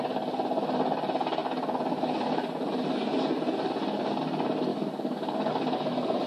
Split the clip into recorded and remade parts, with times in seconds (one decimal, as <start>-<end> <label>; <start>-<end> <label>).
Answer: 0.0-4.7 recorded; 4.7-5.5 remade; 5.5-6.3 recorded

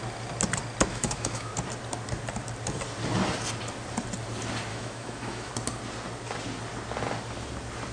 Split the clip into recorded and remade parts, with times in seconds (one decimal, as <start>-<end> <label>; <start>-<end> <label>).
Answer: 0.0-0.9 recorded; 0.9-1.5 remade; 1.5-4.7 recorded; 4.7-5.5 remade; 5.5-7.9 recorded

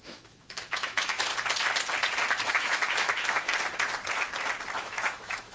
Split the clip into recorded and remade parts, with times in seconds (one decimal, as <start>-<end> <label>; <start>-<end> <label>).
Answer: 0.0-1.3 remade; 1.3-2.5 recorded; 2.5-3.5 remade; 3.5-4.8 recorded; 4.8-5.5 remade

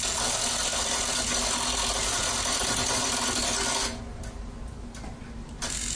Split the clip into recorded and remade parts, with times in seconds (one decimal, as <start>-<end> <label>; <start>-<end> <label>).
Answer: 0.0-6.0 recorded

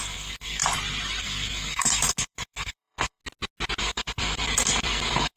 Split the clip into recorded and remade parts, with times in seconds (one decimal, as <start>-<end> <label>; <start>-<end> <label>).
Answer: 0.0-0.6 remade; 0.6-1.2 recorded; 1.2-3.2 remade; 3.2-3.8 recorded; 3.8-5.4 remade

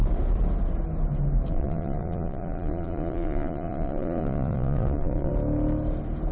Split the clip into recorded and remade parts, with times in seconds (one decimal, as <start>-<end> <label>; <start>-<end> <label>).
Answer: 0.0-1.5 recorded; 1.5-5.3 remade; 5.3-6.3 recorded

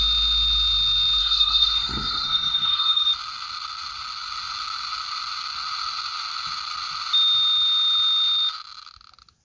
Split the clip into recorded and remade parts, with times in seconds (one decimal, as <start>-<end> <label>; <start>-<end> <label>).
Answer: 0.0-1.2 recorded; 1.2-3.1 remade; 3.1-9.4 recorded

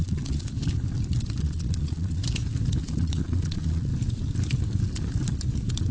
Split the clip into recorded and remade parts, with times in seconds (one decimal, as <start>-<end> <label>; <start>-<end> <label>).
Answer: 0.0-0.5 remade; 0.5-1.4 recorded; 1.4-2.2 remade; 2.2-2.8 recorded; 2.8-3.9 remade; 3.9-5.9 recorded